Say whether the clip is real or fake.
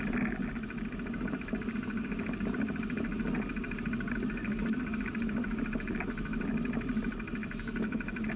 real